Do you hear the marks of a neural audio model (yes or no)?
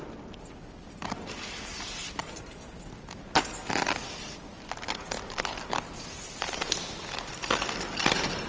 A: no